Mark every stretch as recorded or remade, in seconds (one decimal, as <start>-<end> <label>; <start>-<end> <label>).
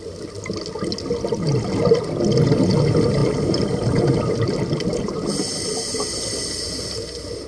0.0-3.2 recorded; 3.2-6.0 remade; 6.0-7.5 recorded